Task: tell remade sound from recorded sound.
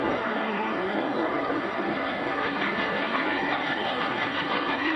remade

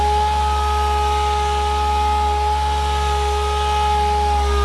recorded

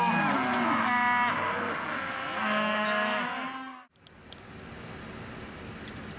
recorded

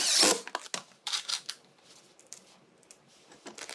recorded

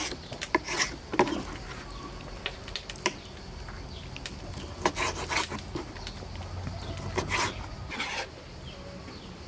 recorded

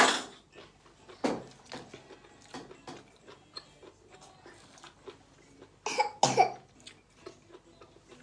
recorded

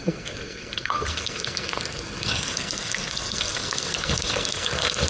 remade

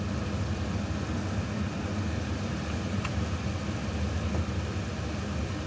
recorded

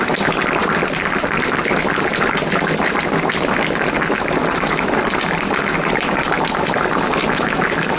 recorded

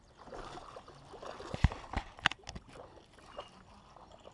recorded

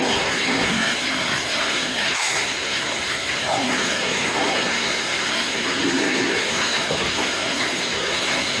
remade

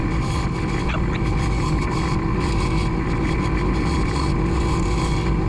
recorded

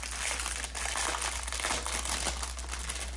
recorded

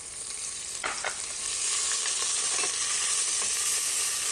recorded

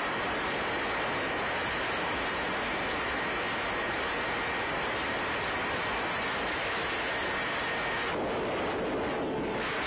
recorded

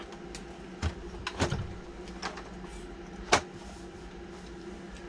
recorded